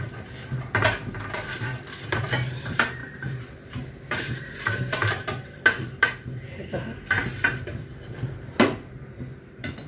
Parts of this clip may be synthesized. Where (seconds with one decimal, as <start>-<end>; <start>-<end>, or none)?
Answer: 0.0-7.2; 7.8-9.9